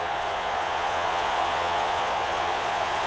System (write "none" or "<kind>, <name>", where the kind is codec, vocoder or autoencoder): vocoder, Vocos